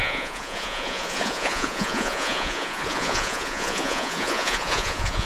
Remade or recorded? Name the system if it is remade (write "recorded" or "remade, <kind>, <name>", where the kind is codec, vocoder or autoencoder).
remade, vocoder, Vocos